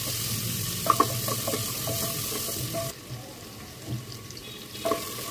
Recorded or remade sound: recorded